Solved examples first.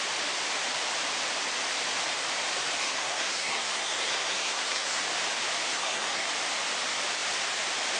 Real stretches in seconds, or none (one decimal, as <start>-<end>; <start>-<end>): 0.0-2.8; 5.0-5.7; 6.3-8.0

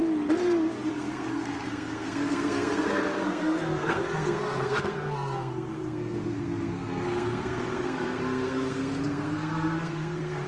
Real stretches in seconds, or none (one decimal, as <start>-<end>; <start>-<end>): 0.0-0.9

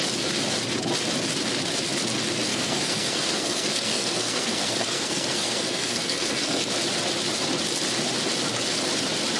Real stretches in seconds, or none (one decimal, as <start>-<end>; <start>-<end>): 0.0-2.5; 6.7-9.4

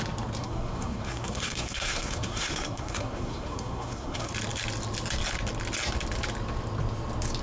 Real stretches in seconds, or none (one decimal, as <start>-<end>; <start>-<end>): 0.0-0.4; 4.3-7.4

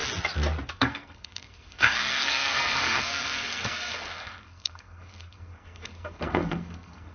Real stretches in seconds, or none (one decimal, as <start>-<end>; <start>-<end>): 0.0-0.7